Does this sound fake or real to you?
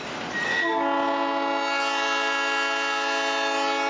real